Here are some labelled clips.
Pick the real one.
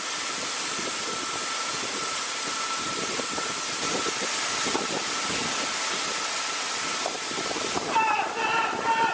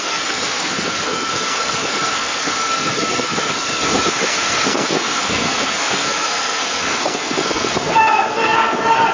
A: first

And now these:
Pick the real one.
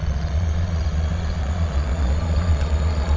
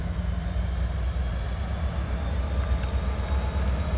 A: second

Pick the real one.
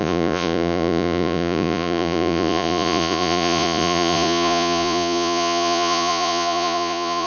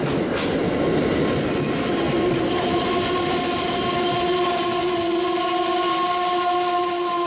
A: second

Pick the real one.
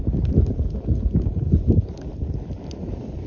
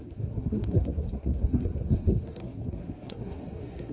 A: first